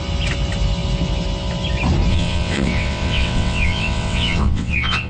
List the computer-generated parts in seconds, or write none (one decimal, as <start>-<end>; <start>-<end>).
2.1-5.1